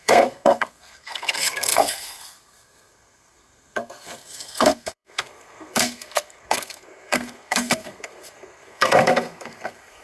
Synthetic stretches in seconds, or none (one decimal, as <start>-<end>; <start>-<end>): 0.0-10.0